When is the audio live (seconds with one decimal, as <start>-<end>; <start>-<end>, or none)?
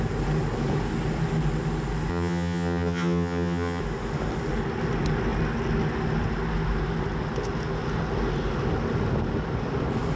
0.0-2.1; 3.8-10.2